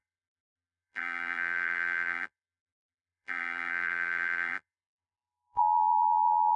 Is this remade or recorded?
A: remade